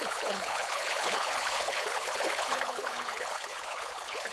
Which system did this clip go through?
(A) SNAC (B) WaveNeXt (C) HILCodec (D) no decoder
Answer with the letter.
C